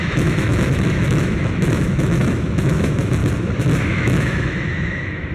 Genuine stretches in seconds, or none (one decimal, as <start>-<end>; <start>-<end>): 3.2-3.8